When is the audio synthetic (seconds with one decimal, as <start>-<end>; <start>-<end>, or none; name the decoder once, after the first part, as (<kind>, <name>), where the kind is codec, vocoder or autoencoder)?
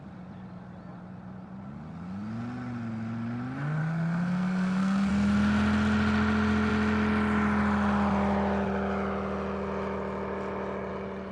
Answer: 3.8-5.1 (codec, SNAC)